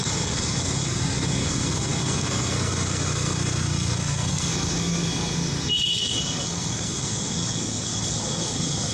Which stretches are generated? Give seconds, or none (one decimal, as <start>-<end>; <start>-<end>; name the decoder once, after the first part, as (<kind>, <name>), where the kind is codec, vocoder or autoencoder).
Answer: 0.0-8.9 (codec, SNAC)